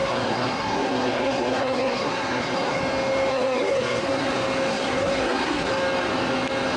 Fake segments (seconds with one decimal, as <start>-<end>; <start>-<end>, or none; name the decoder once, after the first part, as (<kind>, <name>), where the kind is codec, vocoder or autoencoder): 0.0-2.8 (codec, SNAC); 3.3-4.3; 4.7-5.7